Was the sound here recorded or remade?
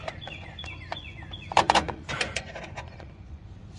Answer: remade